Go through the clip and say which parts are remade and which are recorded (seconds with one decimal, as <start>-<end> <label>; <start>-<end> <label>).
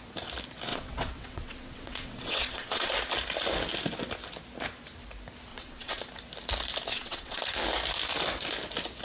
0.0-0.7 recorded; 0.7-2.9 remade; 2.9-5.5 recorded; 5.5-6.0 remade; 6.0-6.9 recorded; 6.9-7.4 remade; 7.4-9.0 recorded